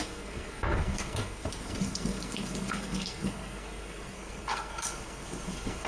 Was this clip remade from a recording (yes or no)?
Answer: yes